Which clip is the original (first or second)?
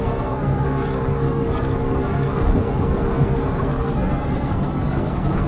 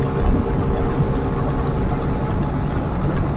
second